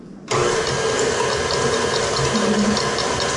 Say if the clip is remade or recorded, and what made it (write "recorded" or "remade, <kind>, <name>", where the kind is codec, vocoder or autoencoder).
recorded